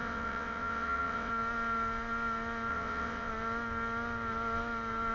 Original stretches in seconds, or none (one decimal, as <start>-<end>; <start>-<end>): 1.3-2.7; 3.3-5.1